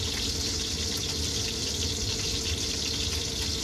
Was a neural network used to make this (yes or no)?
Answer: no